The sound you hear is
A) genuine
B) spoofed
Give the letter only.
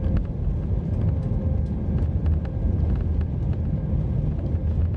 A